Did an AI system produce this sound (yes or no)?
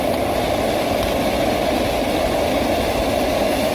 no